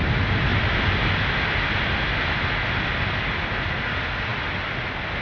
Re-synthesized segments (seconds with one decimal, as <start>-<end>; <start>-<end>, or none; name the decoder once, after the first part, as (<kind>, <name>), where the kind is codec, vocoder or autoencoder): none